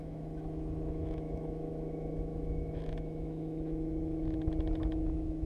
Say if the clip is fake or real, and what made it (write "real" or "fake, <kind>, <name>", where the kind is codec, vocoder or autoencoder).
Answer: fake, autoencoder, DAC-VAE